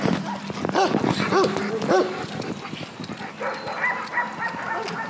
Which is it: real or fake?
real